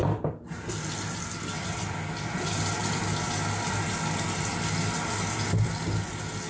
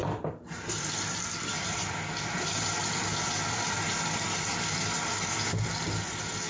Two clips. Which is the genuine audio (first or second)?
first